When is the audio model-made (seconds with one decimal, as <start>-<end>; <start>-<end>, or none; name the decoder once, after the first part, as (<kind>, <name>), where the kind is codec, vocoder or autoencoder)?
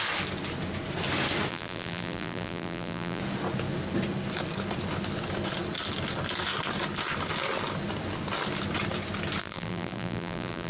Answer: 1.5-3.2 (vocoder, BigVGAN v2); 9.4-10.7